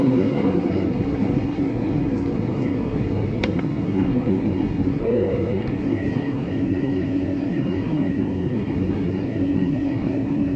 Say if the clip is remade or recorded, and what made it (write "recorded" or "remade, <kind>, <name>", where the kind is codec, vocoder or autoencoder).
remade, codec, SNAC